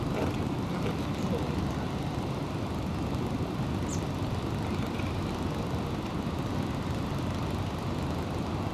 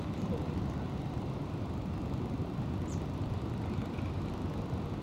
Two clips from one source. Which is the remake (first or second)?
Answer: second